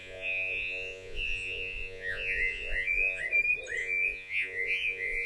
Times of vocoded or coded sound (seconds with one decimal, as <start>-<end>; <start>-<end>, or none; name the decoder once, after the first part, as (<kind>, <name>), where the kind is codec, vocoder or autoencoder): 0.0-3.2 (vocoder, Vocos); 3.8-5.3